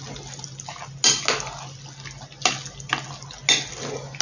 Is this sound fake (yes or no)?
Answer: no